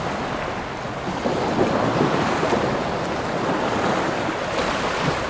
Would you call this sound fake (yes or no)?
no